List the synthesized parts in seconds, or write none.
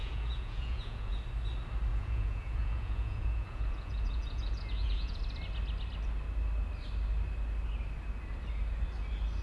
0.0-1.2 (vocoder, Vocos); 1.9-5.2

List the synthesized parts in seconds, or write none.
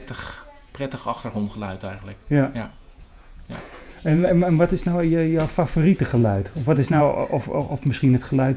0.0-4.3 (vocoder, Vocos); 6.2-7.0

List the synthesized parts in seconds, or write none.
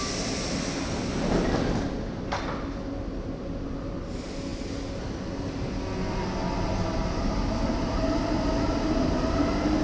none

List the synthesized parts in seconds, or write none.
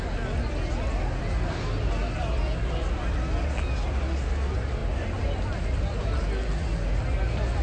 none